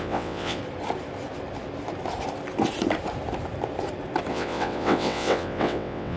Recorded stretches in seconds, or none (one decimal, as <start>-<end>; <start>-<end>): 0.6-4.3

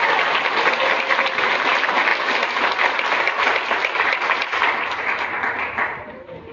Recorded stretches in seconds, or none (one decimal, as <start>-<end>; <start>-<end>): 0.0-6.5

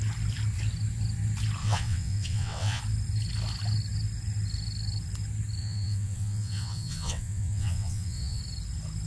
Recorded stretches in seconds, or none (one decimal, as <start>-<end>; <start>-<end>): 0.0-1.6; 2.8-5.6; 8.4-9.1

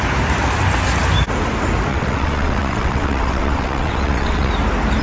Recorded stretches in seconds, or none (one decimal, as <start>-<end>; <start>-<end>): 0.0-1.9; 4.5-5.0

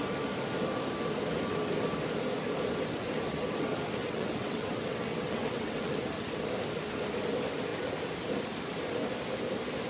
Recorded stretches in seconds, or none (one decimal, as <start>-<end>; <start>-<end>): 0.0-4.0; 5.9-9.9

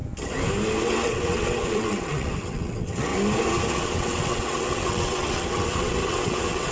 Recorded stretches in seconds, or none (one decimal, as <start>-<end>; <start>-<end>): 0.0-0.8; 3.1-3.7